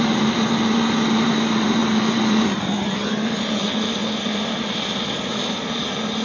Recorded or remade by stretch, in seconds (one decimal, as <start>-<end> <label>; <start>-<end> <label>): 0.0-6.2 recorded